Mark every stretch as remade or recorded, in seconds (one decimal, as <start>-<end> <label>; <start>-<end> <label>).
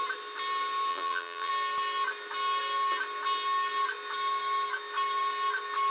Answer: 0.0-0.9 recorded; 0.9-1.5 remade; 1.5-5.9 recorded